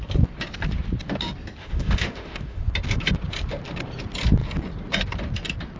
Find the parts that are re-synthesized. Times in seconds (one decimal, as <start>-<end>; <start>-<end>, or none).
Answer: 1.6-2.6